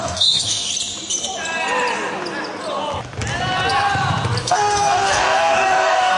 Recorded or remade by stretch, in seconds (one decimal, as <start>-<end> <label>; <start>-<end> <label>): 0.0-0.7 remade; 0.7-4.4 recorded; 4.4-6.2 remade